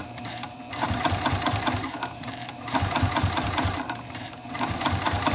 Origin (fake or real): fake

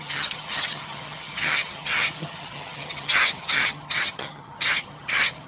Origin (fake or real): fake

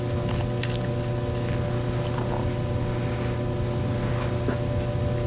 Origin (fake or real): real